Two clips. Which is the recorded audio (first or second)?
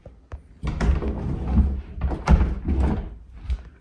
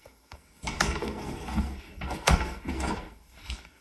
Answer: first